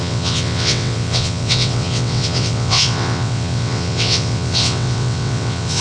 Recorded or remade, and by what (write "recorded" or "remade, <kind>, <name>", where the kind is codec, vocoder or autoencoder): remade, vocoder, WaveNeXt